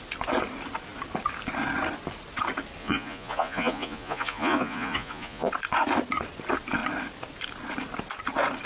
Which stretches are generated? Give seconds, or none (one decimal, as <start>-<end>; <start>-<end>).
2.8-5.5

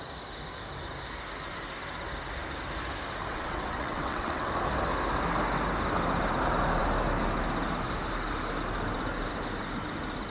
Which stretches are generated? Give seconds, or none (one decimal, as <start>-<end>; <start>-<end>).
3.3-4.5

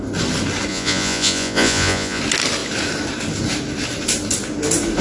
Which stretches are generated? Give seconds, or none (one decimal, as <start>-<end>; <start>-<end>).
0.7-2.2